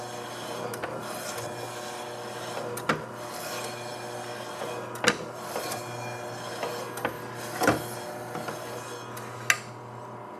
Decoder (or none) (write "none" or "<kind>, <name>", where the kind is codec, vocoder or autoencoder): none